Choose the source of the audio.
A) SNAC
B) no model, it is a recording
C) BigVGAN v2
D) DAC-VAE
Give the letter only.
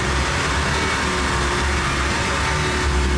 B